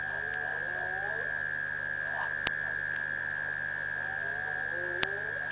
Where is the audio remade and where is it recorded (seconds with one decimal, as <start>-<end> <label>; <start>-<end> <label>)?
0.0-5.5 recorded